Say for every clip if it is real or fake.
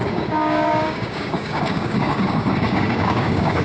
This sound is fake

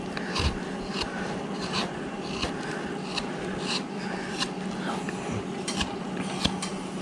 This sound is real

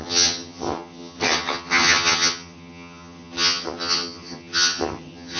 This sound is fake